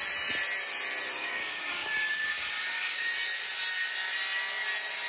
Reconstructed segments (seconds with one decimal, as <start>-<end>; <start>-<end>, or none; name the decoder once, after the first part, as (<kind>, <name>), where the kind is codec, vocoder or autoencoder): 1.2-3.1 (codec, DAC)